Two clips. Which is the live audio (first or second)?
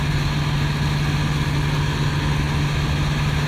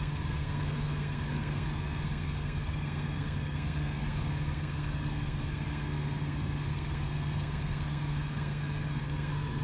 first